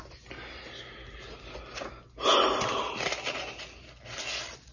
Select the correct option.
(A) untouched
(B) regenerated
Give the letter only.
A